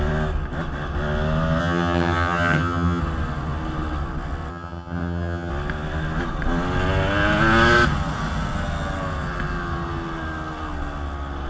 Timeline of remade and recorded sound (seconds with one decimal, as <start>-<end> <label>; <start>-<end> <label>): 0.0-1.6 recorded; 1.6-3.0 remade; 3.0-4.5 recorded; 4.5-5.5 remade; 5.5-11.5 recorded